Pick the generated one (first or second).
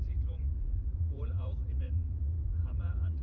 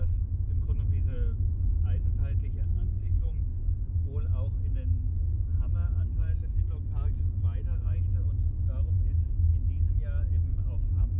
first